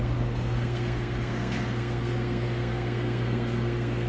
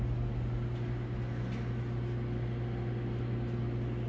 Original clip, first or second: second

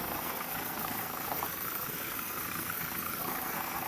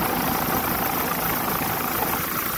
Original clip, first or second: second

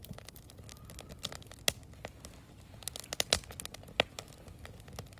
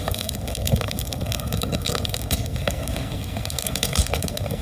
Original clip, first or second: first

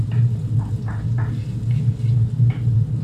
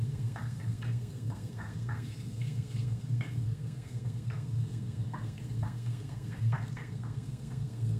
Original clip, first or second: first